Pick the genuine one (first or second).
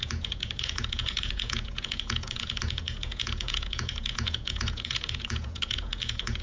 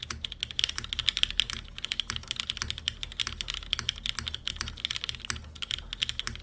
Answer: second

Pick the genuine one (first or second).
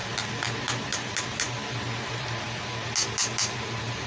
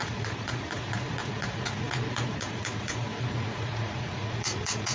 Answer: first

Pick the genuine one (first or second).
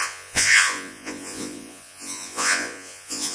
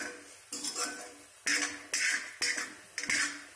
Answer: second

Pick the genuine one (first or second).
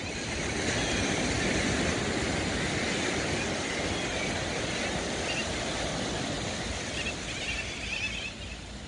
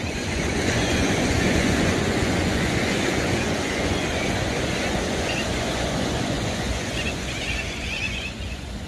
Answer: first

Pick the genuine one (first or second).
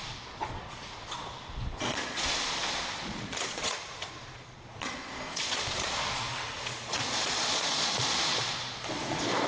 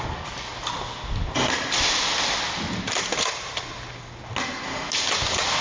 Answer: second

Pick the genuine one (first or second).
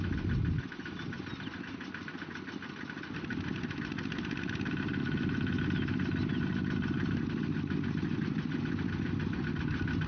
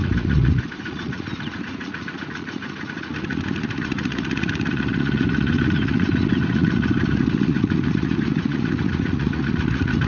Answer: first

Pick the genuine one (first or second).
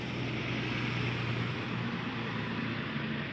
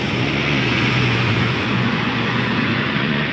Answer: first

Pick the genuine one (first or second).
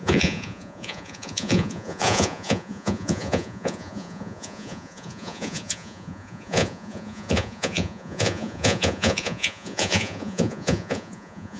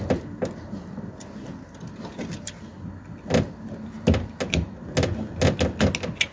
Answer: second